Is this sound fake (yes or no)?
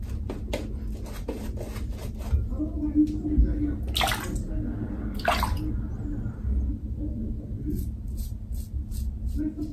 no